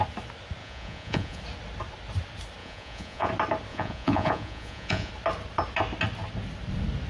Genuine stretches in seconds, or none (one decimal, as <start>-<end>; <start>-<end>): 0.0-0.6; 1.4-2.6; 3.3-3.7; 5.1-7.1